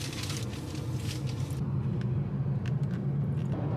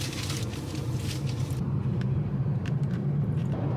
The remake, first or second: second